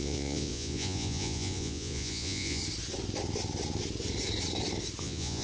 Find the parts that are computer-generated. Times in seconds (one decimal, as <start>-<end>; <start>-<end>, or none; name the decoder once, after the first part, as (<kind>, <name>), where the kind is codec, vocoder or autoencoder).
0.0-2.6 (vocoder, Vocos); 5.0-5.4